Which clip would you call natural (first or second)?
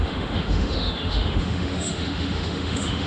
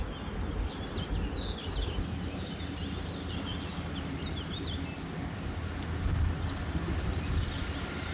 second